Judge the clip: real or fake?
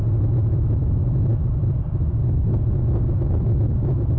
real